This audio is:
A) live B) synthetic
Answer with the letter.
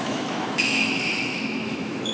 B